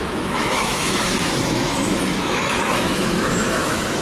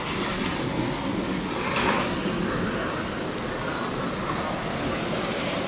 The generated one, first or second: first